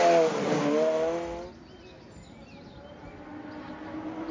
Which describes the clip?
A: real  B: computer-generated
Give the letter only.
A